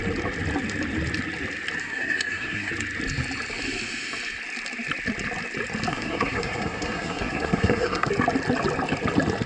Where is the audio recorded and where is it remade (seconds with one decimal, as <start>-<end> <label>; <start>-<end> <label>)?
0.0-1.8 recorded; 1.8-2.7 remade; 2.7-5.9 recorded; 5.9-8.1 remade; 8.1-9.5 recorded